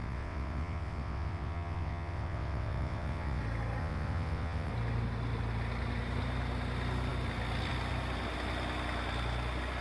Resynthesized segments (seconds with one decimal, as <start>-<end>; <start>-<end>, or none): 0.0-3.4; 3.8-4.7